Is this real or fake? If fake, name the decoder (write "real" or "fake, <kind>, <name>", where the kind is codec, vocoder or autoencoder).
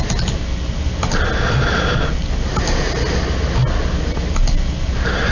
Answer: real